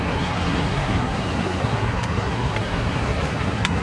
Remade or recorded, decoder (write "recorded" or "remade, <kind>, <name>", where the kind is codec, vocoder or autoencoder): remade, codec, SNAC